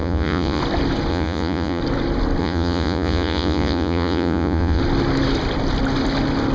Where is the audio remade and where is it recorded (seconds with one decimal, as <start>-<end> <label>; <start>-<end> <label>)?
0.0-0.6 remade; 0.6-1.1 recorded; 1.1-1.8 remade; 1.8-2.4 recorded; 2.4-4.8 remade; 4.8-6.5 recorded